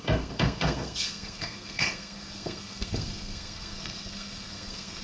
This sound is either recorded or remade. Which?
remade